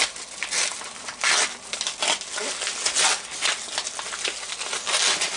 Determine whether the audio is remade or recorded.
recorded